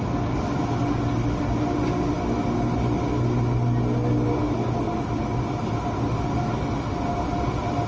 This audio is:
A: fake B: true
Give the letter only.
B